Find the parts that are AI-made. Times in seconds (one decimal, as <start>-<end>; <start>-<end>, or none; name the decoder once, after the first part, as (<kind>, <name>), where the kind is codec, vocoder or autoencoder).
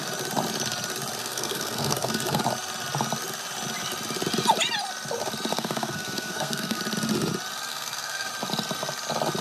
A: 1.2-2.4 (codec, SNAC); 5.5-6.8; 7.7-8.3